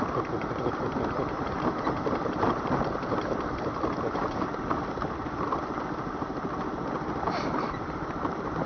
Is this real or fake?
real